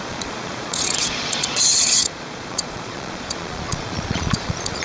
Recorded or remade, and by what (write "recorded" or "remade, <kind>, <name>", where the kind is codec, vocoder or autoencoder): remade, vocoder, Vocos